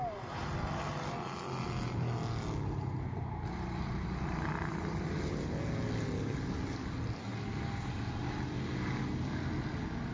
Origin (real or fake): real